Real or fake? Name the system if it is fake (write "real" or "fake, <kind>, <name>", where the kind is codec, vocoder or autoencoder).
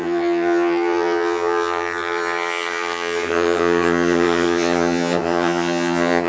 fake, vocoder, HiFi-GAN